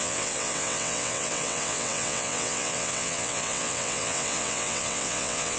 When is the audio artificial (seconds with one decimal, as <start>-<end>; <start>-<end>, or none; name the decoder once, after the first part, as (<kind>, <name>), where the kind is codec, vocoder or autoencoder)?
0.0-5.6 (vocoder, WaveNeXt)